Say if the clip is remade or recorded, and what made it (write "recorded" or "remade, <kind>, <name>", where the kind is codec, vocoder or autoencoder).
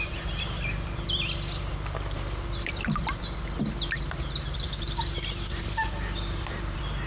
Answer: remade, vocoder, BigVGAN v2